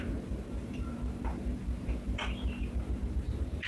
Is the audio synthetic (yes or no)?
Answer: yes